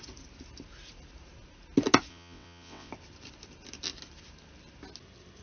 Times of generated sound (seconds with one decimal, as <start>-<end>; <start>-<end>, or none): 2.1-2.9